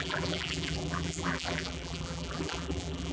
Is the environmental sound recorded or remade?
remade